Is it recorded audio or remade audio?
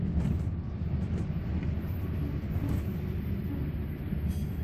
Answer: recorded